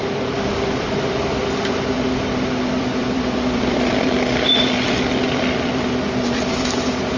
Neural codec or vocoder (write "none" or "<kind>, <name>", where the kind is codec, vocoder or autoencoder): vocoder, BigVGAN v2